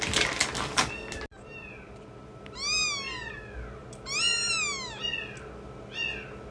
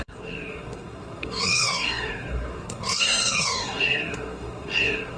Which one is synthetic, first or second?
second